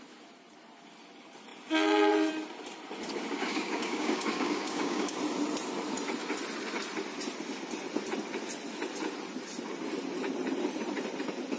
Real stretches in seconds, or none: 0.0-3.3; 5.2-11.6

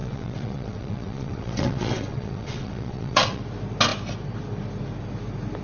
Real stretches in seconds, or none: 3.4-5.6

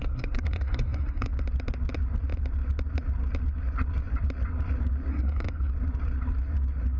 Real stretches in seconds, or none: 1.3-5.1; 5.7-7.0

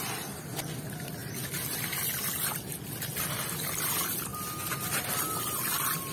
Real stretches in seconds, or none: 0.0-6.1

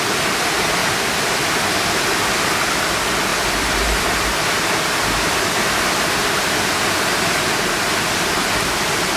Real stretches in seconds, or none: 0.0-0.8; 1.6-9.2

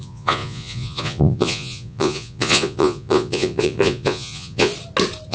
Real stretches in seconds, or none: 4.7-5.3

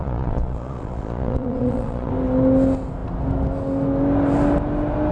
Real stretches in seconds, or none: 2.1-5.1

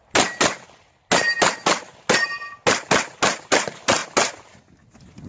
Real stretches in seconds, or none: 0.0-5.3